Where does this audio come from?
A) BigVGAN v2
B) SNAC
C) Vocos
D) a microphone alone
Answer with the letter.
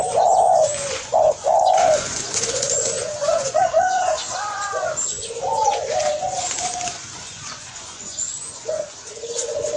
C